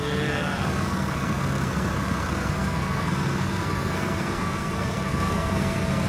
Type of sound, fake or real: fake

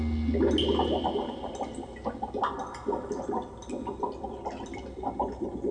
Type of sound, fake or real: real